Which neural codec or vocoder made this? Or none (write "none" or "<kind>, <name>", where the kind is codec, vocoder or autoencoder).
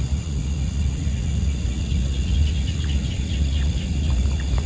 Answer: vocoder, Vocos